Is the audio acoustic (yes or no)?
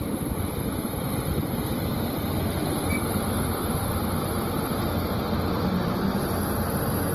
yes